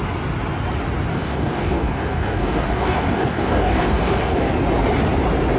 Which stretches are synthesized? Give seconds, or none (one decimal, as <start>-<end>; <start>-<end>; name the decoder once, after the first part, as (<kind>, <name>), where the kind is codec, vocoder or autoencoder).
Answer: 1.1-4.5 (codec, DAC)